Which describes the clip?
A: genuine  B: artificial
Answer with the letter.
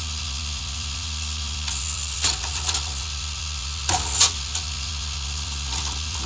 B